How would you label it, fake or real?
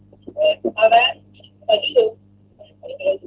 real